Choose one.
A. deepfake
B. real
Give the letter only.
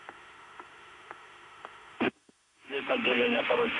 A